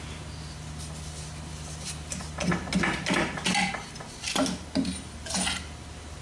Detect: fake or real real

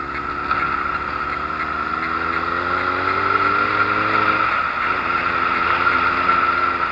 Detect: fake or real real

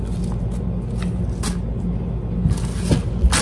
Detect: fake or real real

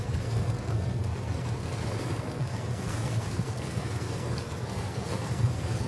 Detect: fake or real fake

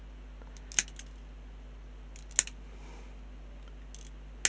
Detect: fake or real real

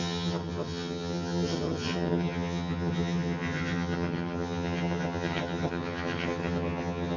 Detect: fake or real fake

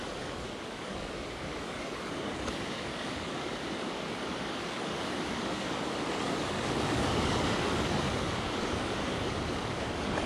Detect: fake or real fake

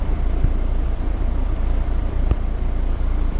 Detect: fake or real fake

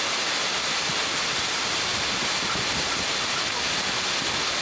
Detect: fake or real real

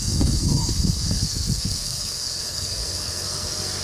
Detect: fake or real fake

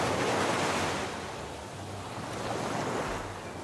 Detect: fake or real real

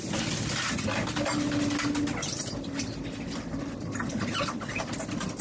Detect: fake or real real